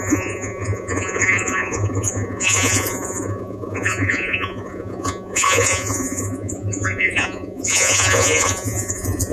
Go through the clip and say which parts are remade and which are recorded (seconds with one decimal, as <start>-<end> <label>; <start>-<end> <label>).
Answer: 0.0-9.3 remade

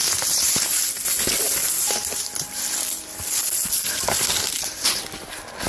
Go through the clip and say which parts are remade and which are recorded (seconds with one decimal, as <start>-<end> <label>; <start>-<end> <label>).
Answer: 0.0-5.7 recorded

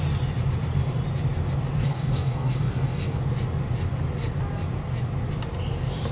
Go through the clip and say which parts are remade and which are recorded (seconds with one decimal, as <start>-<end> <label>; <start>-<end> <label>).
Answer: 0.0-1.8 recorded; 1.8-3.2 remade; 3.2-6.1 recorded

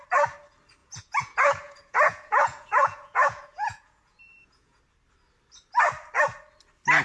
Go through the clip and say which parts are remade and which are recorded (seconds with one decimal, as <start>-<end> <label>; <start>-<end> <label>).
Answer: 0.0-0.8 recorded; 0.8-4.8 remade; 4.8-7.0 recorded

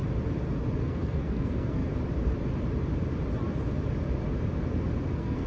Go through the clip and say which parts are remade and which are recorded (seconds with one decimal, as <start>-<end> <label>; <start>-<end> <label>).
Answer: 0.0-0.8 recorded; 0.8-1.8 remade; 1.8-5.1 recorded; 5.1-5.5 remade